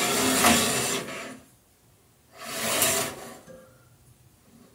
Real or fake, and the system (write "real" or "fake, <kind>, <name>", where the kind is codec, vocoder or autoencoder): real